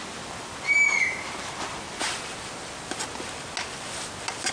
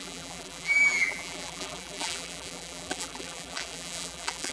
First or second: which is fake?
second